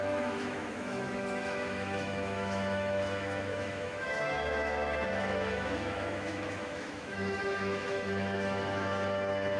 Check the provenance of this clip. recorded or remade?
remade